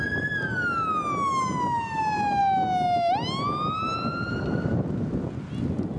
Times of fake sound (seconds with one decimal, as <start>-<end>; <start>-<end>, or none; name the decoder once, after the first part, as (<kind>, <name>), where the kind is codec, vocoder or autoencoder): none

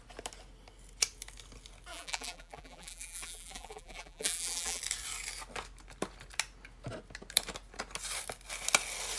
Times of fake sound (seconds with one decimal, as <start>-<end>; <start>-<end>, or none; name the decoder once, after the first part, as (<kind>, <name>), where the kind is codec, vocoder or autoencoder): 1.9-4.8 (vocoder, BigVGAN v2)

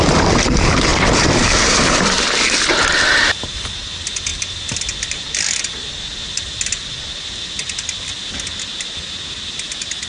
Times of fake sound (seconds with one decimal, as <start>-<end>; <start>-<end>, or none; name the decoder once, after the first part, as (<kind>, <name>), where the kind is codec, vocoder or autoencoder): 0.9-2.4 (vocoder, BigVGAN v2); 4.3-8.1